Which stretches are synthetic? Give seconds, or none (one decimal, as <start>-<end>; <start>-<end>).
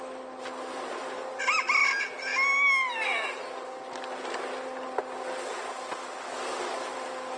0.7-1.4